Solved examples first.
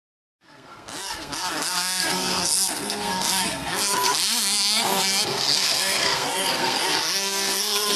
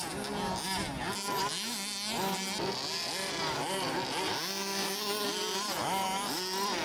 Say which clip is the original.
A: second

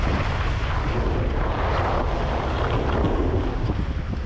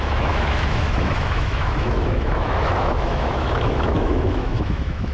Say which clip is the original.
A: first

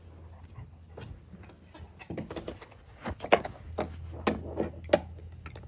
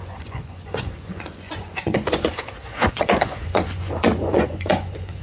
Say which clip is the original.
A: first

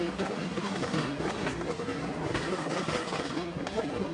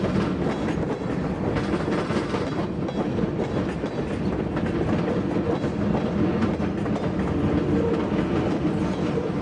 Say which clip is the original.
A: second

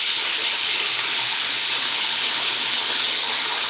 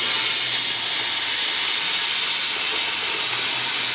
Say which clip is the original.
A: second